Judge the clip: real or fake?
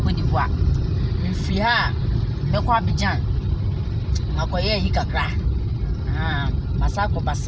fake